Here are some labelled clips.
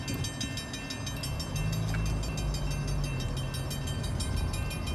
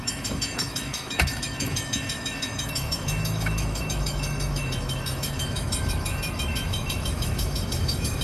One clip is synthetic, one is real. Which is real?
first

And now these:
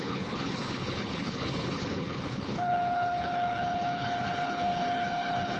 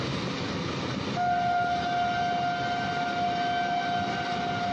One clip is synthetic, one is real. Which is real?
second